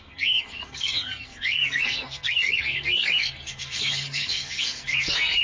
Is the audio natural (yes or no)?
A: no